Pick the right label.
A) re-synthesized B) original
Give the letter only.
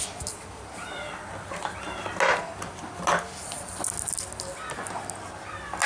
B